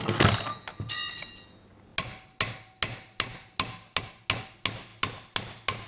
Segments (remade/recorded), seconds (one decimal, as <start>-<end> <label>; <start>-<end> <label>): 0.0-5.9 recorded